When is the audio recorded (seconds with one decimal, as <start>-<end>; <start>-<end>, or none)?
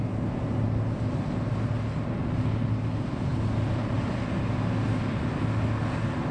0.0-6.3